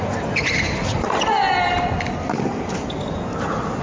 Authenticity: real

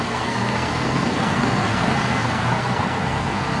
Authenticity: fake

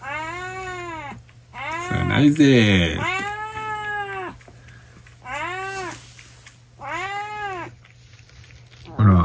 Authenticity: real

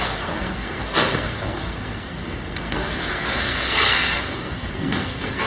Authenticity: fake